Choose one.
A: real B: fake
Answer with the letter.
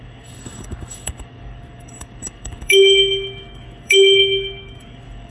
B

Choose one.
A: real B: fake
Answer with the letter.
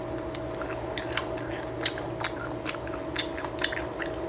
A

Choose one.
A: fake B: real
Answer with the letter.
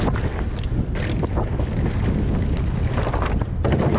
B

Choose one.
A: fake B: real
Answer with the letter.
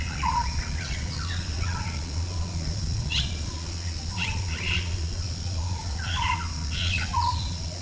A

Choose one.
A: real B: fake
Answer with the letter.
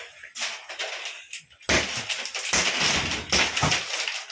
A